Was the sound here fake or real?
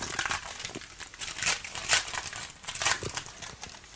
fake